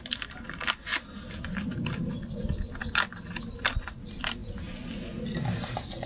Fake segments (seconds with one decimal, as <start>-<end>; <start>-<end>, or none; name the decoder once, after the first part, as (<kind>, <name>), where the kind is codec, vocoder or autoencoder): none